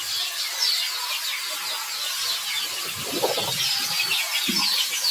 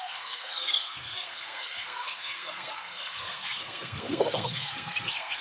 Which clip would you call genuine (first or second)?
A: first